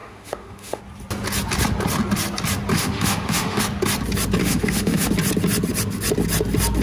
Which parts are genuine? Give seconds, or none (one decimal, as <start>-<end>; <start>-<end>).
0.8-2.7; 3.6-4.4; 5.1-6.8